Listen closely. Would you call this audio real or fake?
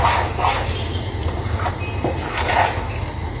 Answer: real